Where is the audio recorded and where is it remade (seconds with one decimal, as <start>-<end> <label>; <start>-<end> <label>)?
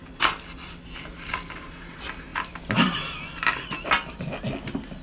0.0-5.0 recorded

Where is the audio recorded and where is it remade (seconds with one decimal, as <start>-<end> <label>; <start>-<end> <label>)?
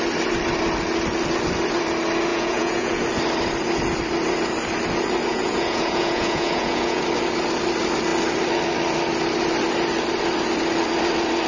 0.0-2.3 recorded; 2.3-3.0 remade; 3.0-5.3 recorded; 5.3-7.0 remade; 7.0-11.5 recorded